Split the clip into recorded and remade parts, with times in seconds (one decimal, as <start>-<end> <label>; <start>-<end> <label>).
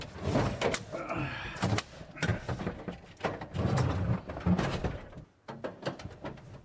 0.0-6.6 recorded